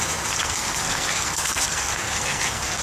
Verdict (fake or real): fake